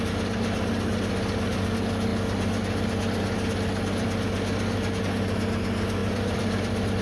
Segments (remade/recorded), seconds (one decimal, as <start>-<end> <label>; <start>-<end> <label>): 0.0-6.0 recorded; 6.0-7.0 remade